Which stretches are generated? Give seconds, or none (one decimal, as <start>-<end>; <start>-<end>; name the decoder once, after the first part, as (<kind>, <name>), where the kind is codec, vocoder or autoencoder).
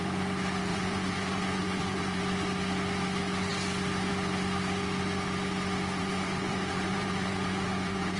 0.7-2.2 (vocoder, Vocos); 6.0-8.2